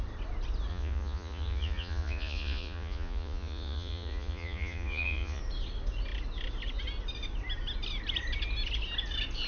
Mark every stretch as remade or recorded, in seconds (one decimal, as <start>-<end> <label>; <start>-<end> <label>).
0.0-0.7 recorded; 0.7-5.4 remade; 5.4-9.5 recorded